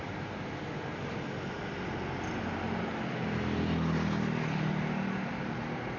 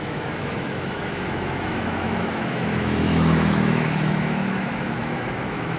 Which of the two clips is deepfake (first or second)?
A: second